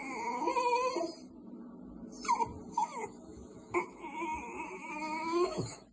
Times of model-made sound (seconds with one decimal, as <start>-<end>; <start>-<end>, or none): 0.0-0.5; 2.7-5.9